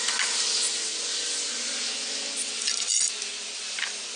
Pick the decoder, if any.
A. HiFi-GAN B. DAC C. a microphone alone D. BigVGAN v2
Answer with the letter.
C